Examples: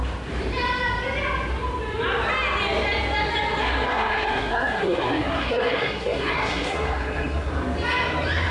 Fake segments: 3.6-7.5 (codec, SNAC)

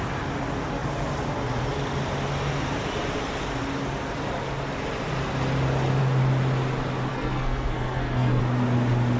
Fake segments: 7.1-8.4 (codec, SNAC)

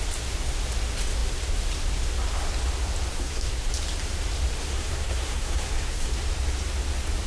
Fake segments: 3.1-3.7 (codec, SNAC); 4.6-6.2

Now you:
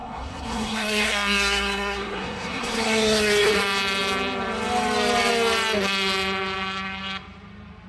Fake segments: 0.0-3.5 (codec, SNAC)

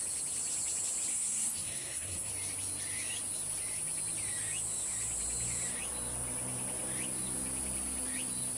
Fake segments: 1.1-2.3 (codec, SNAC)

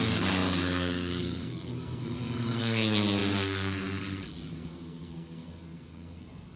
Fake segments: 0.0-6.6 (codec, SNAC)

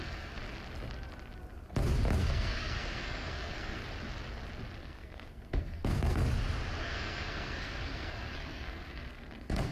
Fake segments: 0.0-0.4 (codec, SNAC); 2.2-3.8; 4.8-6.2; 6.8-9.7